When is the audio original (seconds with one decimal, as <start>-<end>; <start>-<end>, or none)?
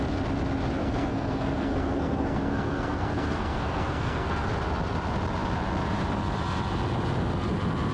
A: 0.0-0.8; 4.5-7.9